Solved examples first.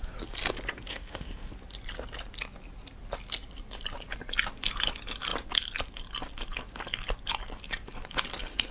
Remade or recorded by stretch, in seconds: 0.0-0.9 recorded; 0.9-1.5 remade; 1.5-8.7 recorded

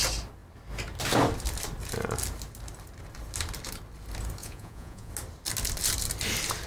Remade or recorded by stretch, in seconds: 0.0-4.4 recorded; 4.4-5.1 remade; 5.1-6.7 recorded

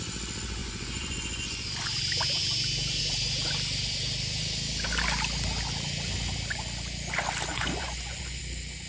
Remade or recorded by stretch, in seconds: 0.0-0.6 recorded; 0.6-1.8 remade; 1.8-7.5 recorded; 7.5-8.4 remade; 8.4-8.9 recorded

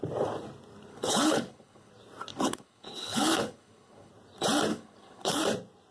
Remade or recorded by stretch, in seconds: 0.0-0.9 recorded; 0.9-1.9 remade; 1.9-2.3 recorded; 2.3-4.1 remade; 4.1-4.7 recorded; 4.7-5.4 remade; 5.4-5.9 recorded

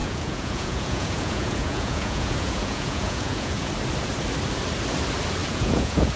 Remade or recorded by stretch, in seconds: 0.0-3.7 remade; 3.7-5.4 recorded; 5.4-6.2 remade

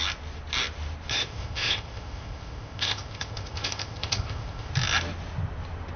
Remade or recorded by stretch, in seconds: 0.0-1.1 recorded; 1.1-4.7 remade; 4.7-6.0 recorded